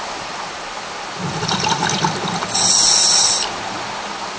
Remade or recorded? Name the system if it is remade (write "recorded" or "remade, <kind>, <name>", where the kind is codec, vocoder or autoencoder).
recorded